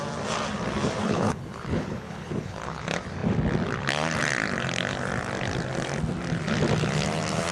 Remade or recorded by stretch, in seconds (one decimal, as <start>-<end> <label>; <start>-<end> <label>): 0.0-1.0 recorded; 1.0-2.8 remade; 2.8-7.5 recorded